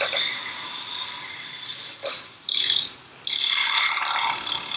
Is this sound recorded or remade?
recorded